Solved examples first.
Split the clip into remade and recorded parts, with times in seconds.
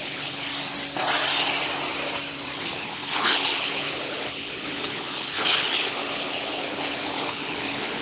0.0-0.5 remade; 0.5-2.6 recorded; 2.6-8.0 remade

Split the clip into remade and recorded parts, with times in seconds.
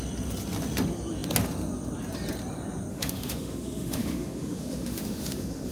0.0-2.9 recorded; 2.9-5.7 remade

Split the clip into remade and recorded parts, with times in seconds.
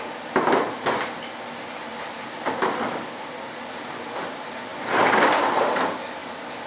0.0-1.9 recorded; 1.9-3.2 remade; 3.2-4.7 recorded; 4.7-5.8 remade; 5.8-6.2 recorded; 6.2-6.7 remade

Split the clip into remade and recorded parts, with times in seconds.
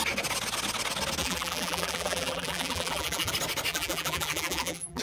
0.0-1.2 recorded; 1.2-3.3 remade; 3.3-3.7 recorded; 3.7-5.0 remade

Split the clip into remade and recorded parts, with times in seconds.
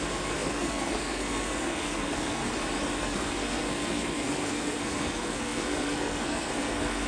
0.0-2.4 remade; 2.4-3.0 recorded; 3.0-7.1 remade